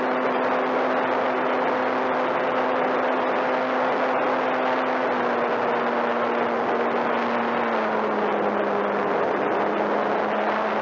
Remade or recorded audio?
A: recorded